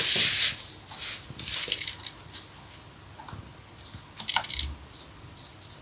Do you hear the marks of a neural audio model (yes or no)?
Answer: no